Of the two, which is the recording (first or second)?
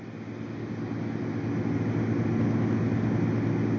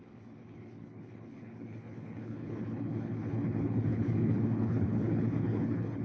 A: first